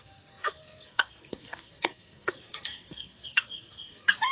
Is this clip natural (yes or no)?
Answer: no